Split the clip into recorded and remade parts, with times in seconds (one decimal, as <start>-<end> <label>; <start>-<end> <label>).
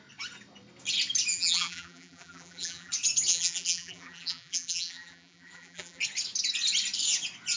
0.0-1.3 recorded; 1.3-2.9 remade; 2.9-3.3 recorded; 3.3-6.0 remade; 6.0-7.6 recorded